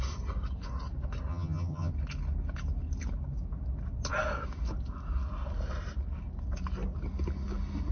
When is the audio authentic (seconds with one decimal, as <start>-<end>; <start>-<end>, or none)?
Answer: 0.0-1.3; 1.9-7.9